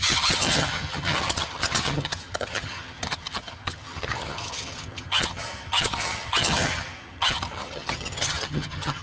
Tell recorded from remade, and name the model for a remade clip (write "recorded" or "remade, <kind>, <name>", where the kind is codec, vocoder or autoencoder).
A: remade, vocoder, HiFi-GAN